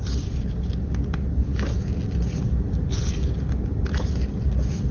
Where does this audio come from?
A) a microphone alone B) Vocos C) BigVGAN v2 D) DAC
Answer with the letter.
A